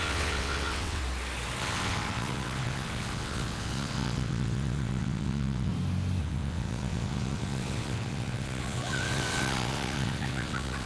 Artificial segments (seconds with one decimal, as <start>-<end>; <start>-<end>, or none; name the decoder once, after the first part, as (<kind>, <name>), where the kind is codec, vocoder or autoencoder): 0.0-1.0 (vocoder, WaveNeXt); 1.6-5.7; 6.2-10.9